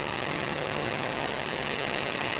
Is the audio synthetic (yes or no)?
yes